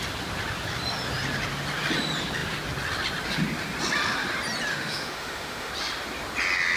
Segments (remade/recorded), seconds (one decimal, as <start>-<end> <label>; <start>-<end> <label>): 0.0-4.7 recorded; 4.7-5.7 remade; 5.7-6.8 recorded